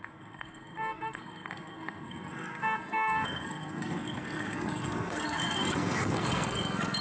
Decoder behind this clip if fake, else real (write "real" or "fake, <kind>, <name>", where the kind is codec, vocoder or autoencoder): fake, codec, SNAC